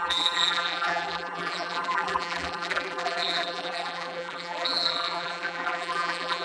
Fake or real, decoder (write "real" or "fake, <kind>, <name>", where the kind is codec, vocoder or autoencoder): fake, vocoder, BigVGAN v2